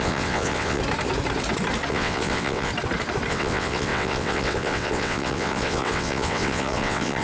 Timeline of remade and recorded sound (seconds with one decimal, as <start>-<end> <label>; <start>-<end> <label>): 0.0-0.8 remade; 0.8-1.9 recorded; 1.9-2.7 remade; 2.7-3.3 recorded; 3.3-7.2 remade